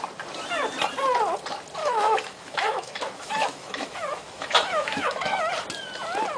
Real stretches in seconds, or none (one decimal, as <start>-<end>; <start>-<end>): 0.0-1.8; 5.5-6.4